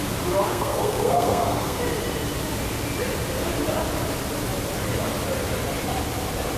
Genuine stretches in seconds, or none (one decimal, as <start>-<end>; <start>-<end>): 0.0-0.5; 1.8-6.6

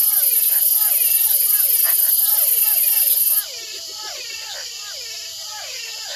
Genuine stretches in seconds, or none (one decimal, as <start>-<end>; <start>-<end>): 0.0-5.3

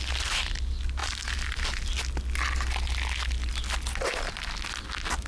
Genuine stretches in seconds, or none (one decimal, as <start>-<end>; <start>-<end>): 0.0-5.3

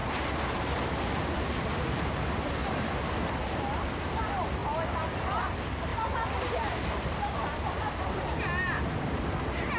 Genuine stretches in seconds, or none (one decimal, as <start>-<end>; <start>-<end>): 0.0-9.8

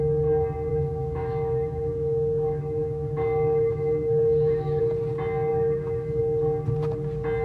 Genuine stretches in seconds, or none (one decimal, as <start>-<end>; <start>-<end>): 0.0-0.7; 4.8-5.5; 6.2-7.4

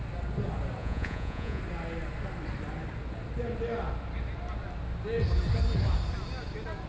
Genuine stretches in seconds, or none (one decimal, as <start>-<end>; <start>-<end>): 0.0-0.8; 1.6-6.9

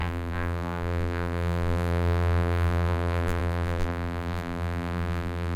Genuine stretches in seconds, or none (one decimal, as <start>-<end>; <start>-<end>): none

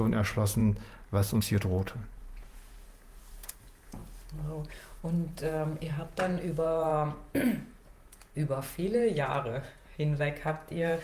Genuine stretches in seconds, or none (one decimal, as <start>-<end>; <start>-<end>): 0.6-1.4; 4.0-4.7